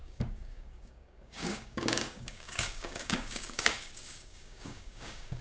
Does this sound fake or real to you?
fake